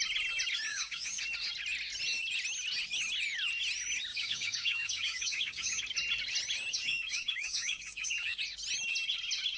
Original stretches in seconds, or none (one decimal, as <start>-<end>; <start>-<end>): 0.0-0.7; 1.2-4.1; 5.8-6.7; 8.4-9.6